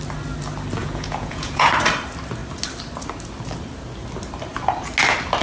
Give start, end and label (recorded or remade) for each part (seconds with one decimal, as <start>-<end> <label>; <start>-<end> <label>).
0.0-0.8 recorded; 0.8-1.7 remade; 1.7-5.4 recorded